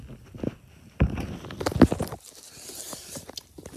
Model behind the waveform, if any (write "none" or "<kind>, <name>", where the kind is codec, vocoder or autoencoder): none